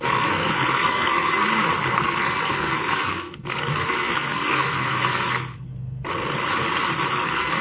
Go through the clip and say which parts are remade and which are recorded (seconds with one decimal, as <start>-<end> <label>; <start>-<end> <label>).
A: 0.0-1.4 remade; 1.4-1.9 recorded; 1.9-5.7 remade; 5.7-7.1 recorded; 7.1-7.6 remade